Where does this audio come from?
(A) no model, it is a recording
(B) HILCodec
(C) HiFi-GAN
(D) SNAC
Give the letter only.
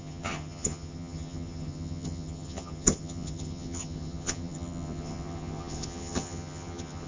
C